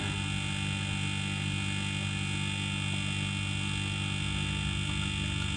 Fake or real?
real